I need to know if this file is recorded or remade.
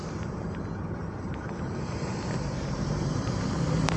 remade